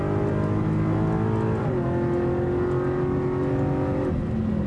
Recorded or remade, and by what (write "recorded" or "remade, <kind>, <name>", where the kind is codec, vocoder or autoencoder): recorded